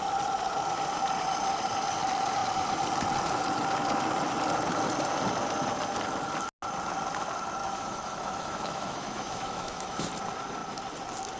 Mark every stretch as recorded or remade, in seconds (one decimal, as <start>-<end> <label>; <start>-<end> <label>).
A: 0.0-7.6 recorded; 7.6-10.1 remade; 10.1-11.4 recorded